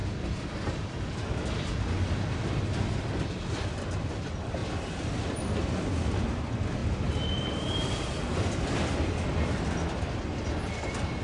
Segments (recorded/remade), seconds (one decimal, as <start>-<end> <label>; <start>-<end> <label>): 0.0-4.6 remade; 4.6-5.8 recorded; 5.8-11.2 remade